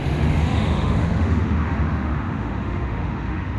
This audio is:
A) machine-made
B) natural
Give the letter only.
A